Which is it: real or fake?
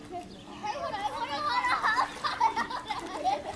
real